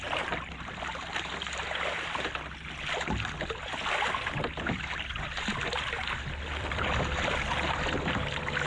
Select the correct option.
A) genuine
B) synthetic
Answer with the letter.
A